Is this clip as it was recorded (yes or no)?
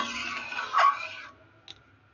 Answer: yes